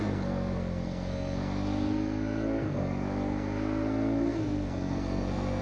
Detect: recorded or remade remade